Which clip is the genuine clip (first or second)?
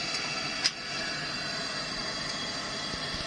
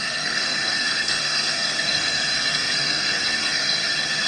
first